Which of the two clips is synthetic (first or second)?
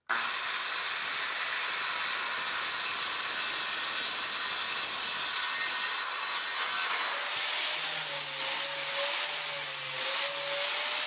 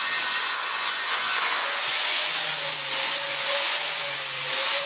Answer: second